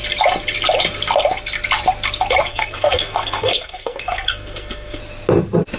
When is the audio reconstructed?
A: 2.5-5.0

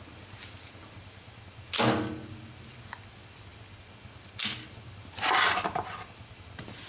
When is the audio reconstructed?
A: none

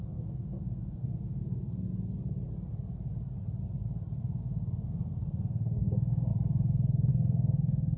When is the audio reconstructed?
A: 0.0-1.9; 4.2-6.3; 7.1-8.0

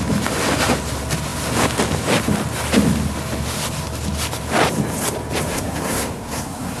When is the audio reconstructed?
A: 5.5-6.8

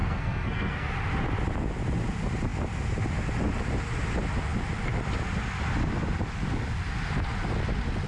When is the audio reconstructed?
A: 0.0-0.9

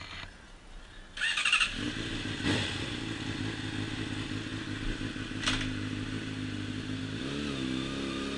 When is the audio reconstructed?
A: none